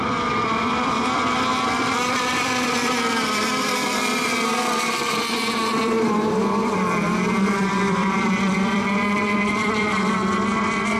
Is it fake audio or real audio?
fake